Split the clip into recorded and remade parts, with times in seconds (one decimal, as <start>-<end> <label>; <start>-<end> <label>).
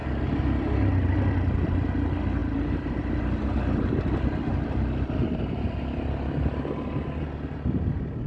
0.0-8.3 recorded